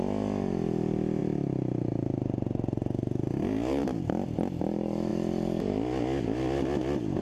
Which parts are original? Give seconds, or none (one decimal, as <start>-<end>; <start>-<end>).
0.0-7.2